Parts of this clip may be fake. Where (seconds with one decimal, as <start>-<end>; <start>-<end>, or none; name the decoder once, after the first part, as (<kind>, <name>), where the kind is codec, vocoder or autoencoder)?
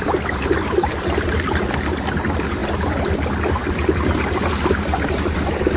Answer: none